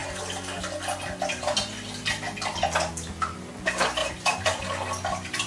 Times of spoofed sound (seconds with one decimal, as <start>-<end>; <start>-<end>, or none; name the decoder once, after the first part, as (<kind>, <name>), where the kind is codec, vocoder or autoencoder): 4.0-4.6 (vocoder, BigVGAN v2)